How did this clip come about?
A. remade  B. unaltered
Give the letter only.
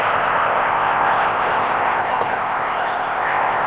A